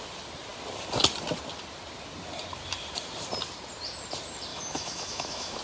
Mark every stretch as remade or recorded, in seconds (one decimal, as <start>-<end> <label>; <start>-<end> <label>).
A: 0.0-4.5 recorded; 4.5-5.6 remade